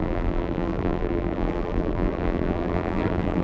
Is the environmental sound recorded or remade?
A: remade